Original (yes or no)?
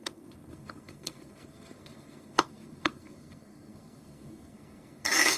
no